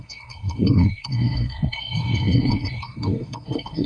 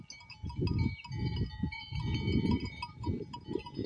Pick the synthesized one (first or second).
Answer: first